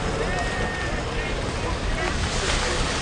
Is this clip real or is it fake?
real